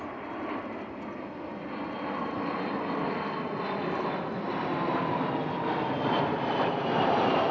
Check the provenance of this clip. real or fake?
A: real